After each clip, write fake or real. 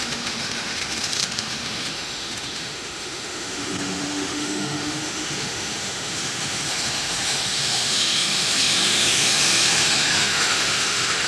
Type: fake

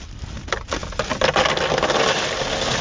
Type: real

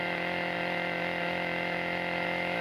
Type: fake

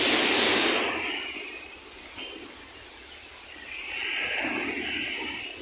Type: real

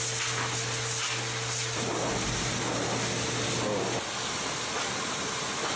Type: real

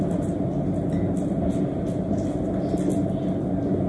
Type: real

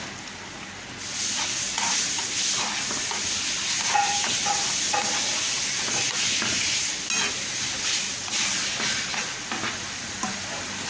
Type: real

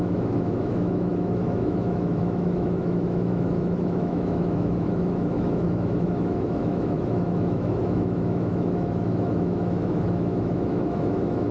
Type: fake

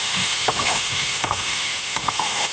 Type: fake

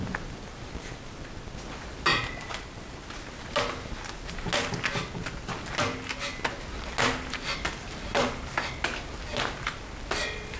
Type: real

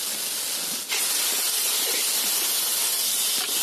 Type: real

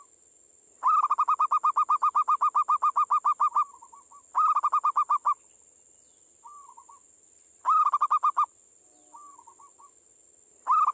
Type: real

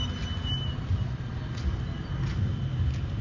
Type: real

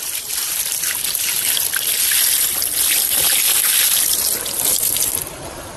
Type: real